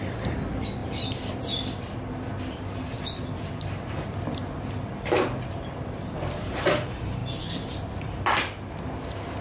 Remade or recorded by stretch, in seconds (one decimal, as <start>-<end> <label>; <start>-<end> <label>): 0.0-7.2 remade; 7.2-8.7 recorded; 8.7-9.4 remade